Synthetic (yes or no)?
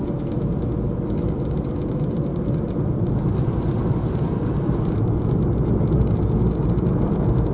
no